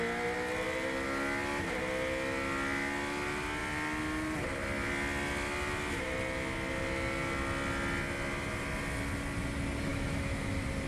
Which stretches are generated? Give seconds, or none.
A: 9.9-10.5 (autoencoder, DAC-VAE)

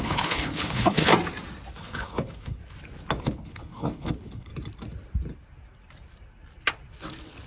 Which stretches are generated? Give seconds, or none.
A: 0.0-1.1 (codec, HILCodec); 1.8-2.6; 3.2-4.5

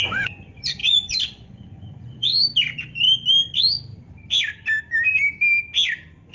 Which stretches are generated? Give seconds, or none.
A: 0.0-2.3 (vocoder, Vocos)